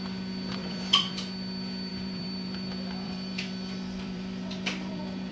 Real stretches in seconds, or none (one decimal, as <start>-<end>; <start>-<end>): 0.0-0.6; 1.1-1.9